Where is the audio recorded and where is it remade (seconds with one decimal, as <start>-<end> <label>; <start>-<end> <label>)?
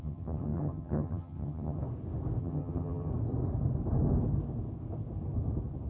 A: 0.0-1.8 remade; 1.8-2.4 recorded; 2.4-3.1 remade; 3.1-5.9 recorded